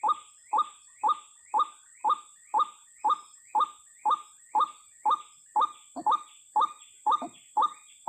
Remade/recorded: recorded